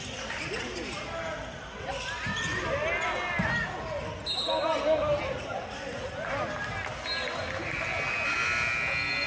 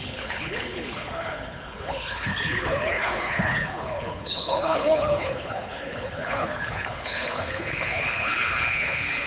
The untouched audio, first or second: first